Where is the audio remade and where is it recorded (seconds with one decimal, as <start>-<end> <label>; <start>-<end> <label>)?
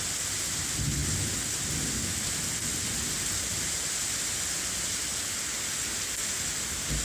0.0-7.0 recorded